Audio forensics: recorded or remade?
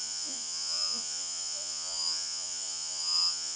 remade